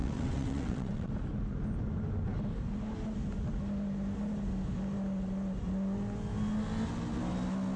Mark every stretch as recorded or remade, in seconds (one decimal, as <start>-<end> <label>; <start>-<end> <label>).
0.0-1.1 remade; 1.1-7.8 recorded